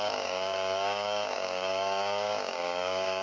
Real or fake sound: fake